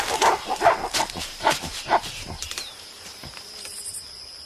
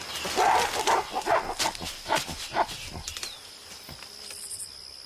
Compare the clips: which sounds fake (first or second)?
first